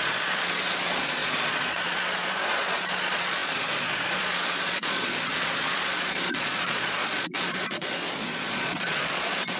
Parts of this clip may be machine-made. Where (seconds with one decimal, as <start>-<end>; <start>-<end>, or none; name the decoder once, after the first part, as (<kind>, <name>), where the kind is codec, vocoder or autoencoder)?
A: 0.0-9.6 (vocoder, Vocos)